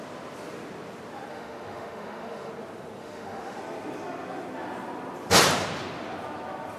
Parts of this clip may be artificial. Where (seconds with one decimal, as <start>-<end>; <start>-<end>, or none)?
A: 1.3-2.5; 3.0-3.6